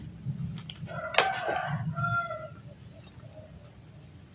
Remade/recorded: recorded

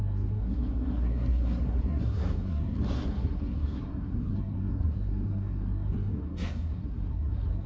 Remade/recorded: remade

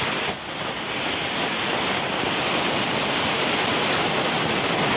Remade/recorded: recorded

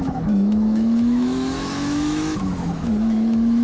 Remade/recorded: remade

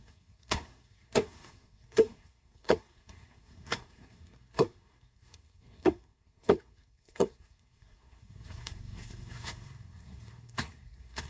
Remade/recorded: remade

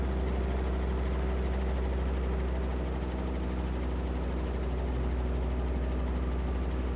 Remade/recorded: recorded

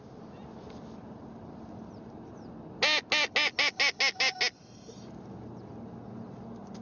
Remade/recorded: recorded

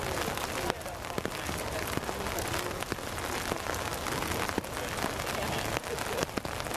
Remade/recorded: recorded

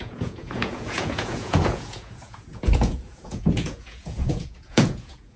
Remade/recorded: remade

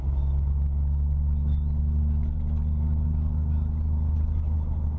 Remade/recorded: recorded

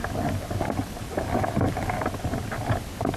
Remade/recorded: recorded